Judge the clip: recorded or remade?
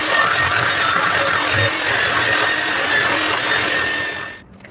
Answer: recorded